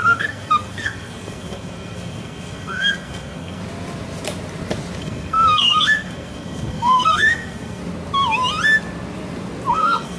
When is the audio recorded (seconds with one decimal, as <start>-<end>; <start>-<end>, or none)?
3.6-5.0; 7.8-9.7